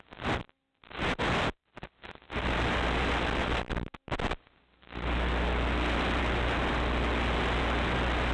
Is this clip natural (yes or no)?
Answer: yes